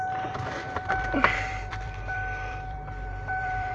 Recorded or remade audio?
remade